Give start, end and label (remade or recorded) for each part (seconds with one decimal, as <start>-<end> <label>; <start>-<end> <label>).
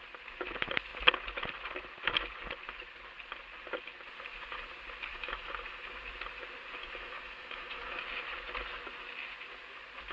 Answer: 0.0-5.1 recorded; 5.1-5.9 remade; 5.9-6.8 recorded; 6.8-8.0 remade; 8.0-10.1 recorded